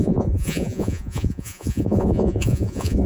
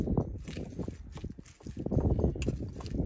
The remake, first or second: first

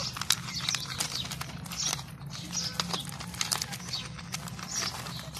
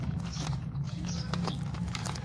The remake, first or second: second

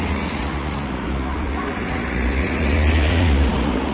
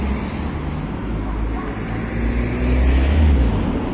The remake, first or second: first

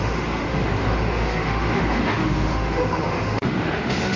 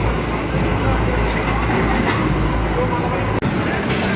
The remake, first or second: first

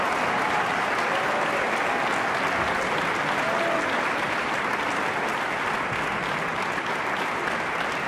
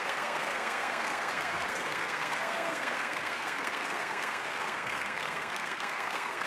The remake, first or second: second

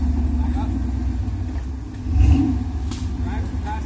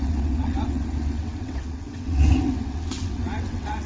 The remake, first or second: second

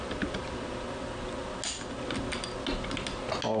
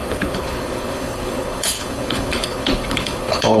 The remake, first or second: second